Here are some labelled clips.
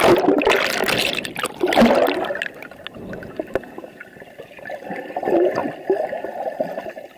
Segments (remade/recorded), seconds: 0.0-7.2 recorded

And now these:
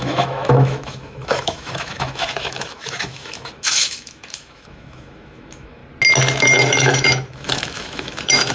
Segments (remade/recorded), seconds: 0.0-5.8 remade; 5.8-6.4 recorded; 6.4-8.5 remade

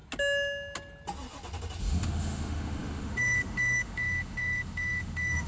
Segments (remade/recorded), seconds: 0.0-1.8 recorded; 1.8-5.5 remade

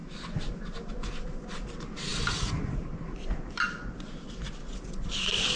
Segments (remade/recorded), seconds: 0.0-5.6 recorded